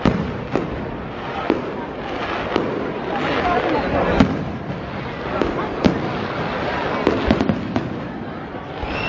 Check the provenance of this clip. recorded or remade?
recorded